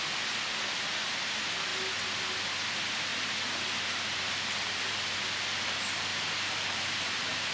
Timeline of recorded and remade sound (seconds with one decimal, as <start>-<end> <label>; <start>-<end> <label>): 0.0-3.1 recorded; 3.1-3.7 remade; 3.7-6.1 recorded; 6.1-7.5 remade